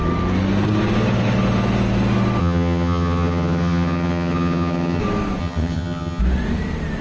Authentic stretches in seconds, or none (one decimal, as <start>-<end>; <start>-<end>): 0.0-2.4; 5.0-5.4; 6.2-7.0